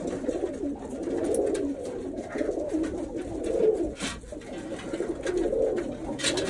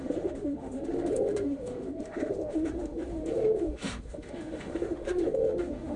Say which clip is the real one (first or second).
first